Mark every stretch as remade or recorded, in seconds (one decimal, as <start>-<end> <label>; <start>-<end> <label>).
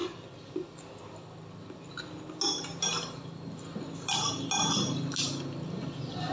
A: 0.0-6.3 recorded